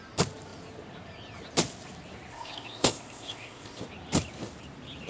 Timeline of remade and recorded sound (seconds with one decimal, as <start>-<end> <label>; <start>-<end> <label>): 0.0-2.3 recorded; 2.3-3.8 remade; 3.8-5.1 recorded